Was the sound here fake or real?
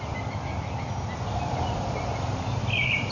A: real